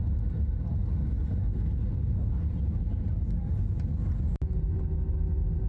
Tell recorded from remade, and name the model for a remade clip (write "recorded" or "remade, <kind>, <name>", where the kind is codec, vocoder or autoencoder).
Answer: recorded